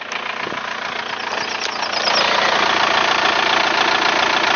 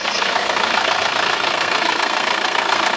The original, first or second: first